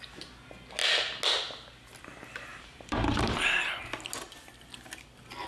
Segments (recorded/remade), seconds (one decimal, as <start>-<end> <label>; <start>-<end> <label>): 0.0-2.5 recorded; 2.5-3.6 remade; 3.6-5.5 recorded

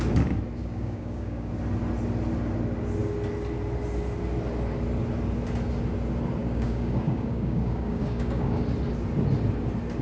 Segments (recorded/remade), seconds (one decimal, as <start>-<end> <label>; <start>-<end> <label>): 0.0-0.6 recorded; 0.6-1.5 remade; 1.5-6.4 recorded; 6.4-8.6 remade; 8.6-10.0 recorded

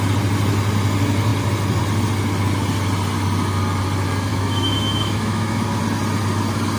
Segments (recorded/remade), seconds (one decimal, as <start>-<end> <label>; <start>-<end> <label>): 0.0-4.3 recorded; 4.3-5.8 remade; 5.8-6.8 recorded